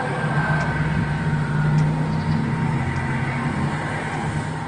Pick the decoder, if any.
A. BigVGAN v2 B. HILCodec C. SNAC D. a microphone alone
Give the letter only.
D